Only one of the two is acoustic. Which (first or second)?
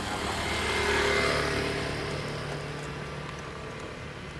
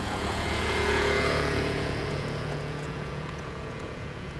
first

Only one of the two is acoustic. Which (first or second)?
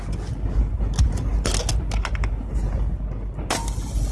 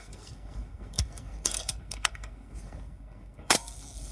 first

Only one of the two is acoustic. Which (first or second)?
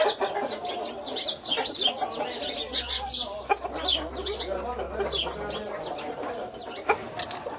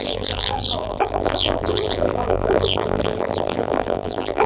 first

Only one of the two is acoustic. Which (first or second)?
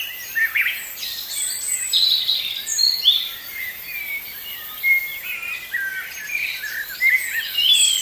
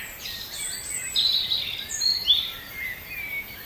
second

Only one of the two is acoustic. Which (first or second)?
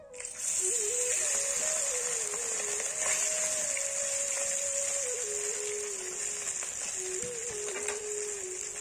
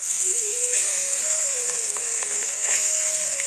first